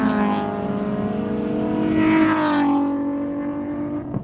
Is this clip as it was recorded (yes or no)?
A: yes